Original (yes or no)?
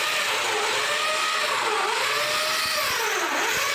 yes